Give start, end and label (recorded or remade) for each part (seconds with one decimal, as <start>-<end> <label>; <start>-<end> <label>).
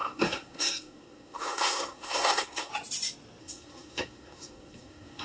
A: 0.0-2.7 remade; 2.7-3.4 recorded; 3.4-5.2 remade